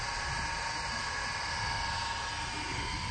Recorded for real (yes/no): yes